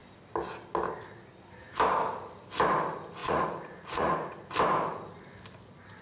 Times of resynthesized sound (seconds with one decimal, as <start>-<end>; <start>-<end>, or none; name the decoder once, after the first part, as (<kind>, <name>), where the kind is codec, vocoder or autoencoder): 3.2-4.3 (vocoder, Vocos)